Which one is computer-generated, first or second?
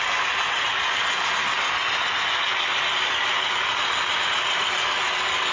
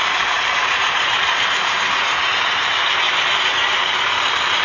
second